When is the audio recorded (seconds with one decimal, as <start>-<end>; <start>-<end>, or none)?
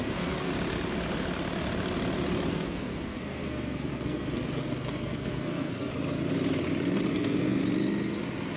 0.5-2.5; 5.9-7.1; 7.6-8.6